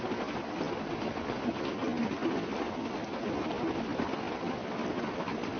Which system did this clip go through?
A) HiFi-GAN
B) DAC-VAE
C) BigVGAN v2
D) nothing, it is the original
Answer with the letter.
D